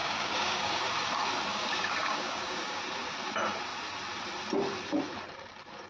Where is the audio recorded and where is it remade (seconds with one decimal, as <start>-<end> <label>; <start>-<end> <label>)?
0.0-0.8 remade; 0.8-1.5 recorded; 1.5-2.8 remade; 2.8-5.9 recorded